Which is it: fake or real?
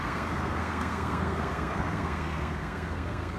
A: fake